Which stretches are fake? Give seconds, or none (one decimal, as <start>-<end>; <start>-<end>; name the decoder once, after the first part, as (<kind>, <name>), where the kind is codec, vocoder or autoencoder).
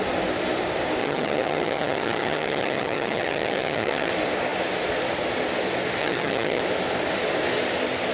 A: 1.0-4.1 (vocoder, HiFi-GAN); 6.0-6.6